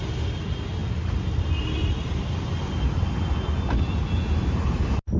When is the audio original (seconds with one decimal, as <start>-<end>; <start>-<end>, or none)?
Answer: 0.0-0.8; 1.8-5.2